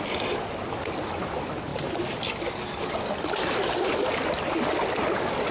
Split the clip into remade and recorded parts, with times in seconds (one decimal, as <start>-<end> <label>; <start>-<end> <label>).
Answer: 0.0-5.5 recorded